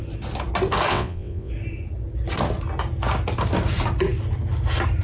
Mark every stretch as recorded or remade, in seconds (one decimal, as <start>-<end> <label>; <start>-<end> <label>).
0.0-0.9 recorded; 0.9-1.5 remade; 1.5-5.0 recorded